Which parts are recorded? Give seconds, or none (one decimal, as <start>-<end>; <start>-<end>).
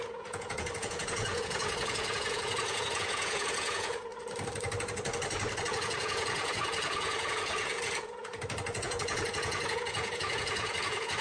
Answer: 4.1-5.7; 8.3-8.8